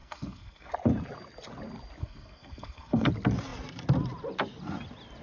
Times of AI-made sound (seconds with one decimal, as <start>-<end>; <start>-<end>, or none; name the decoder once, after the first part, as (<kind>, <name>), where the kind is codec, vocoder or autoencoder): 0.0-0.7 (codec, SNAC); 2.0-3.1